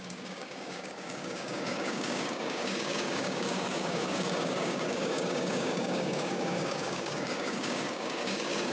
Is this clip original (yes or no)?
no